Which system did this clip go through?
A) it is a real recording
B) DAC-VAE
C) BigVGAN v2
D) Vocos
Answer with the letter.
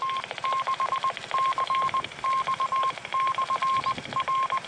A